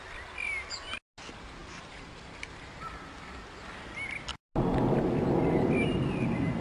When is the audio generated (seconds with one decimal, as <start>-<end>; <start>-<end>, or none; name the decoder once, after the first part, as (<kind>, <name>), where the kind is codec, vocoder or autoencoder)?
1.6-2.9 (vocoder, BigVGAN v2)